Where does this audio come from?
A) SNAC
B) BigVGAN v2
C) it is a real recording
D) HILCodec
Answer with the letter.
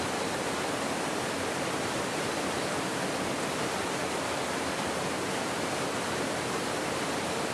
C